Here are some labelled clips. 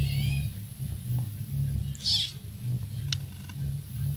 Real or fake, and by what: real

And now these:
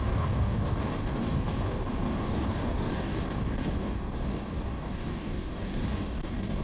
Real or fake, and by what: fake, codec, DAC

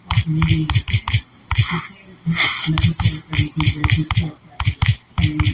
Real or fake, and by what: real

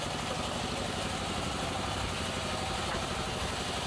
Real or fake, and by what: real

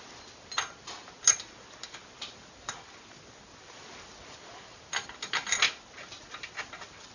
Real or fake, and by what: real